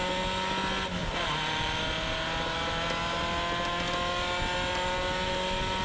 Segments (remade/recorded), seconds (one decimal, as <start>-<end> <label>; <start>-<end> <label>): 0.0-1.0 recorded; 1.0-1.8 remade; 1.8-5.8 recorded